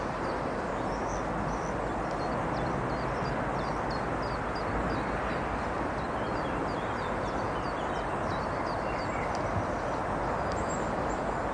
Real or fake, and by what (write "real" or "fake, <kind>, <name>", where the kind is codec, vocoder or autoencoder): real